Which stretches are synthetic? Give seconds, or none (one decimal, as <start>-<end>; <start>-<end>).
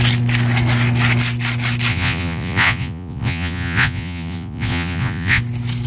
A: 1.9-5.4